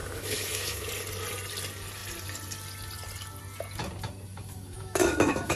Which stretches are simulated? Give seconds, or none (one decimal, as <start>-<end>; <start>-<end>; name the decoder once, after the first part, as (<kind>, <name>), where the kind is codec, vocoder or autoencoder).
0.0-0.9 (autoencoder, DAC-VAE); 4.3-5.6